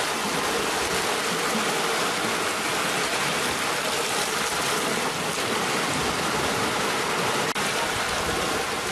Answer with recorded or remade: recorded